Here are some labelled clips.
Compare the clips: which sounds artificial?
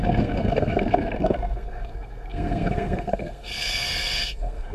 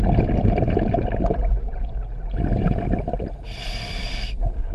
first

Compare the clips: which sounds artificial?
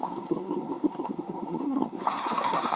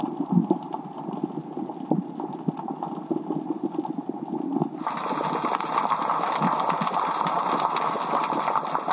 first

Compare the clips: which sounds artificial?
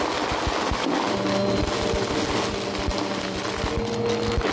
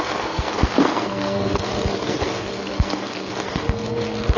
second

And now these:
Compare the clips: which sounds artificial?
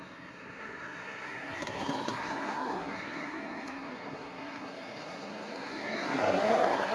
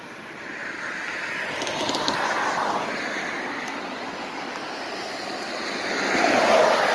first